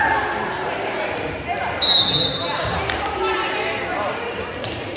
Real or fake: real